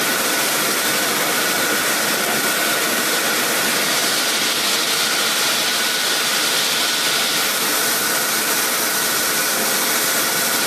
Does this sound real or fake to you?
real